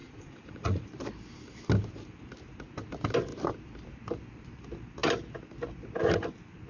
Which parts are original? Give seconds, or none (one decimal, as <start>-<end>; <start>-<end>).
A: 0.9-6.7